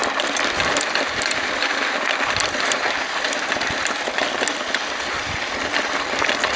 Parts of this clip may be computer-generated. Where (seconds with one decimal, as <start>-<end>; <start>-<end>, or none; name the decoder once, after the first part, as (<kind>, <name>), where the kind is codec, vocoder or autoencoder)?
none

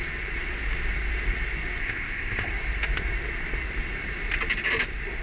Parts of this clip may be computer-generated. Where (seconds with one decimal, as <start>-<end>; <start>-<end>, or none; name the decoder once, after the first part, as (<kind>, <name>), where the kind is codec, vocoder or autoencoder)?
1.8-2.5 (codec, ZipCodec)

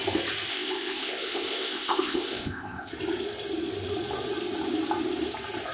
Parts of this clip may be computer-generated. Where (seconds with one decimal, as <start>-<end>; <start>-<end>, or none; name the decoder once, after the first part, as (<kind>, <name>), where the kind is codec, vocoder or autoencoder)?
0.5-2.9 (codec, ZipCodec)